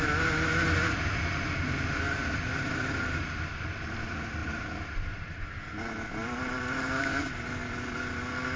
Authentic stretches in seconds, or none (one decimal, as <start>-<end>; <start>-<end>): 0.0-4.4; 5.4-6.2; 7.0-8.6